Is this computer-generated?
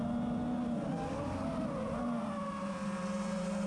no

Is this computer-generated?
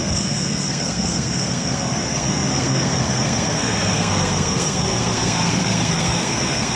yes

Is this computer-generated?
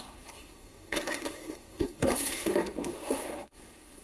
yes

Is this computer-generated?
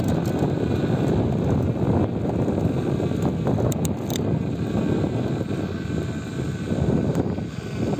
no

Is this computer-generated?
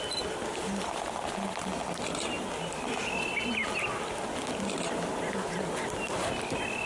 no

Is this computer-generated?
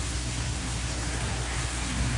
yes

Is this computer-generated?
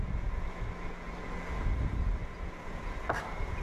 no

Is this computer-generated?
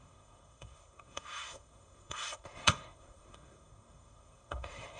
yes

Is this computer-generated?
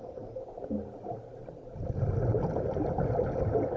no